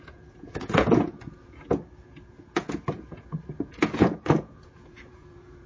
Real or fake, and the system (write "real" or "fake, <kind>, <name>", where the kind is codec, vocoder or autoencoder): fake, vocoder, Vocos